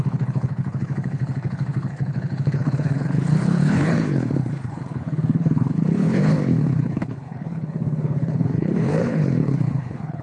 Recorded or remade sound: remade